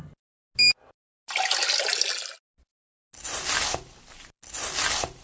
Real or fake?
real